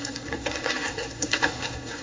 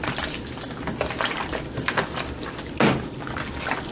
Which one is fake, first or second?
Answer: first